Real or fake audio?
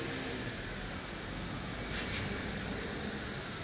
real